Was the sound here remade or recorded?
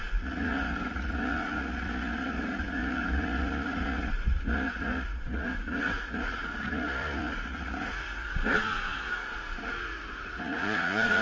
remade